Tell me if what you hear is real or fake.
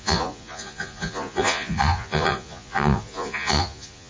fake